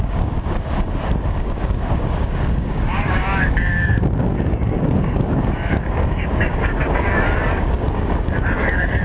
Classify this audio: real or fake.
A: fake